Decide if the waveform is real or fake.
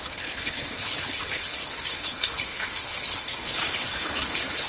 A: fake